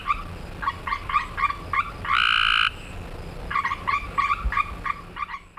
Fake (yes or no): no